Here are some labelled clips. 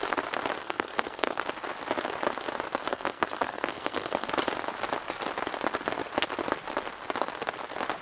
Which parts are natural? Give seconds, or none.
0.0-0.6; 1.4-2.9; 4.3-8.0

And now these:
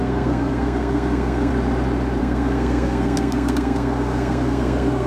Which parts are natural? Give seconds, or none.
1.5-2.2

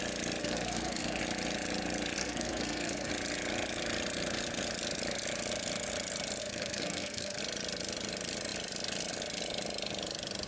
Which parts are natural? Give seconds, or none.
0.0-0.4; 1.2-2.2; 3.1-6.4; 7.4-10.5